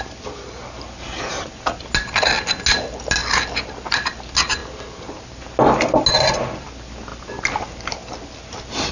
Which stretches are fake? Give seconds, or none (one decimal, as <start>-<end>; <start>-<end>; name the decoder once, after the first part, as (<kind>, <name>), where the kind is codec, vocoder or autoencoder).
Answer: none